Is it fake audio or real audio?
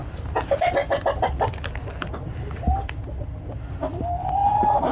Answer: real